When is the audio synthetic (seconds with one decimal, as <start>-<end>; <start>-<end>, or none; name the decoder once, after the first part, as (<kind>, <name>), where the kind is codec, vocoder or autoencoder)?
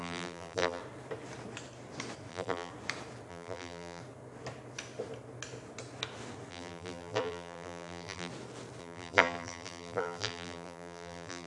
0.0-0.8 (vocoder, BigVGAN v2); 2.3-2.7; 3.3-4.0; 6.5-8.3; 8.8-11.5